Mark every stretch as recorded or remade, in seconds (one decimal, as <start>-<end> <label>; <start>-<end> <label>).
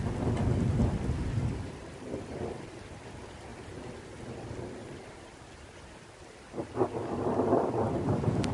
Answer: 0.0-3.5 remade; 3.5-7.6 recorded; 7.6-8.5 remade